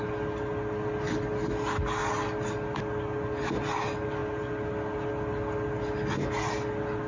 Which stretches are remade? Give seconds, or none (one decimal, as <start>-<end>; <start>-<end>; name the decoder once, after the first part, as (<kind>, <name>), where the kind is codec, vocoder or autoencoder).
none